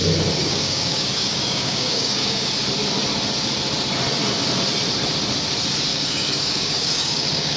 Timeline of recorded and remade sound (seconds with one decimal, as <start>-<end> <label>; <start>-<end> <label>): 0.0-0.4 recorded; 0.4-2.5 remade; 2.5-5.9 recorded; 5.9-7.6 remade

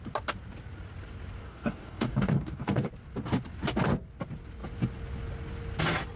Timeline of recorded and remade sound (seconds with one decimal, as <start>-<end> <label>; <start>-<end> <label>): 0.0-1.4 recorded; 1.4-2.9 remade; 2.9-6.2 recorded